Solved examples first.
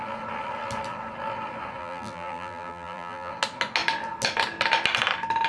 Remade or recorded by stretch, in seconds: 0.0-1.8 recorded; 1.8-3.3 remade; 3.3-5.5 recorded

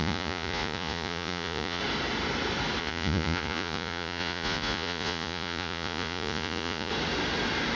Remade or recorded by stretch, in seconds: 0.0-1.8 remade; 1.8-2.8 recorded; 2.8-6.9 remade; 6.9-7.8 recorded